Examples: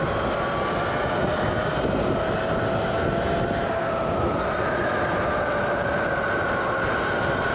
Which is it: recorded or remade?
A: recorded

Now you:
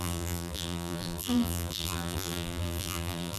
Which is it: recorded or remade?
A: remade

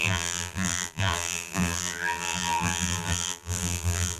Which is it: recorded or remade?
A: remade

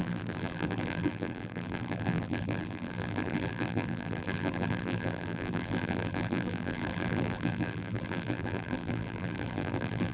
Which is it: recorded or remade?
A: remade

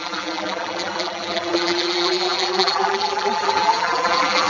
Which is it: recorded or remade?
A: remade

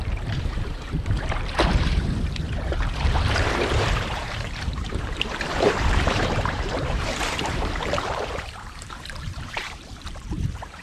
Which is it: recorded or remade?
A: remade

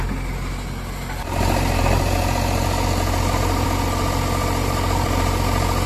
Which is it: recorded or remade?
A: recorded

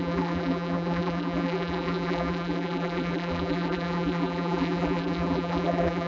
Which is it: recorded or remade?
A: remade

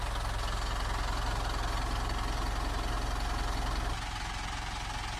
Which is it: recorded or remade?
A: recorded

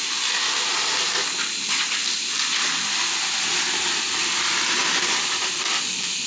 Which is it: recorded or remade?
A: recorded